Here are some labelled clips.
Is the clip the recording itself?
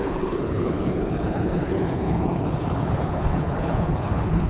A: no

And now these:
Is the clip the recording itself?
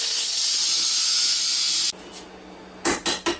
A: yes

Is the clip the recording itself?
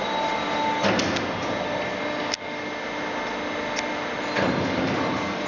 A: yes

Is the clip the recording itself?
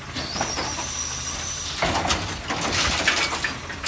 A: yes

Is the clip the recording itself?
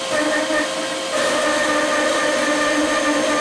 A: yes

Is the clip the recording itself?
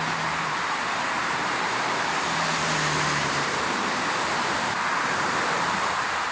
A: no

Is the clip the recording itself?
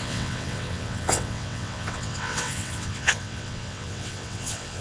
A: no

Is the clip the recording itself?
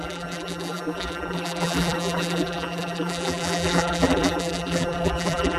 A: no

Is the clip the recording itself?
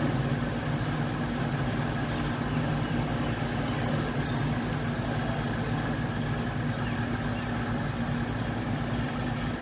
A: yes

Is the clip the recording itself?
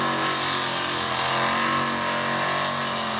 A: yes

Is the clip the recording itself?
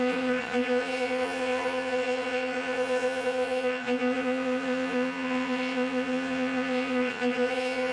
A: no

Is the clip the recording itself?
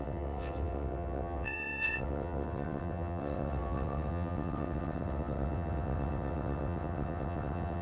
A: no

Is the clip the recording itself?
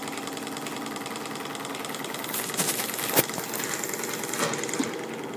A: yes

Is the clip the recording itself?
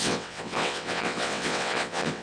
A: no